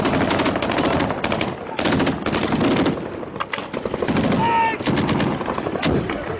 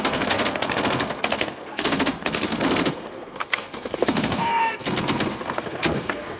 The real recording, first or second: first